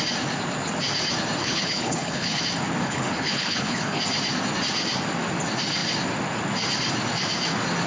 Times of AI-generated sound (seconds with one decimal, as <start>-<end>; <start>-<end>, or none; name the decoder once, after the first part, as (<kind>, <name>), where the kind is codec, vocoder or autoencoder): 1.4-2.4 (codec, HILCodec); 2.8-4.0